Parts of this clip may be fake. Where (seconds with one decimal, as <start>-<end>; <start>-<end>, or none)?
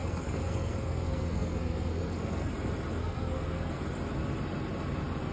0.0-2.5; 3.0-3.8